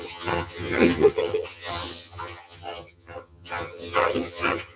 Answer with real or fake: fake